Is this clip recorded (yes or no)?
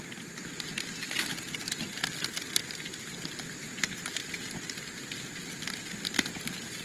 yes